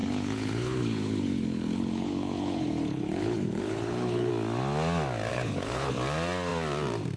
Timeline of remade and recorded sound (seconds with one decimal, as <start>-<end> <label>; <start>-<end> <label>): 0.0-4.3 remade; 4.3-5.3 recorded; 5.3-5.9 remade; 5.9-7.2 recorded